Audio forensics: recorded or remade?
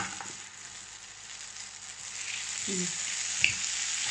recorded